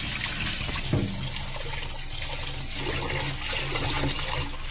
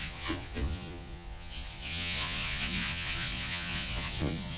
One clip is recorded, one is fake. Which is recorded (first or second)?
first